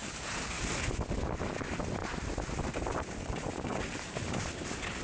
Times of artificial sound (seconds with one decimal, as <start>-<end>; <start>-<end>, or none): none